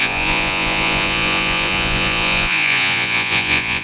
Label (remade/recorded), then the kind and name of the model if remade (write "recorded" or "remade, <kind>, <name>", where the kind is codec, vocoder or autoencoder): remade, vocoder, Vocos